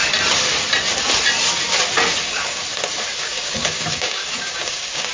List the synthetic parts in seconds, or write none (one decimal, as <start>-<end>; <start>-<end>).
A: 2.2-2.6; 3.2-5.1